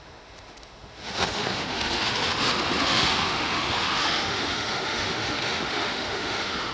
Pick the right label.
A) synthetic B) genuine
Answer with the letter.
A